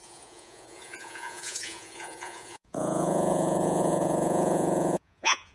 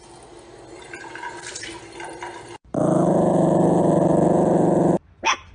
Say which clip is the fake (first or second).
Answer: first